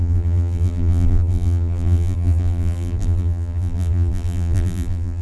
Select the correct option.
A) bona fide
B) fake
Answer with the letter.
B